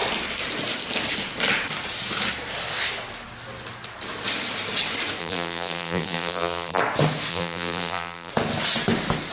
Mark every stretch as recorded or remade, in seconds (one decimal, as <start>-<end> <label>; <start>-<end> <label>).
0.0-5.2 recorded; 5.2-6.8 remade; 6.8-7.3 recorded; 7.3-8.3 remade; 8.3-9.3 recorded